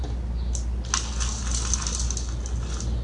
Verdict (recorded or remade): recorded